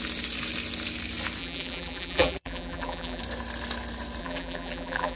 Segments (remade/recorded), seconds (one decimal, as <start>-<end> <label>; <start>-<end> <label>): 0.0-1.4 recorded; 1.4-3.2 remade; 3.2-4.2 recorded; 4.2-5.2 remade